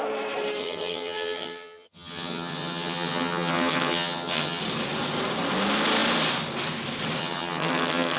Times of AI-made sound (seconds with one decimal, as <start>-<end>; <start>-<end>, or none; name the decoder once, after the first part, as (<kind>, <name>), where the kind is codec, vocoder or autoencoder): 0.6-4.6 (vocoder, HiFi-GAN); 7.2-8.2